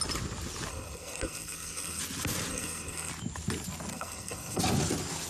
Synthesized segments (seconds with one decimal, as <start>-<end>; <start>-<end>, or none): 0.7-2.0; 2.5-3.1; 3.9-4.6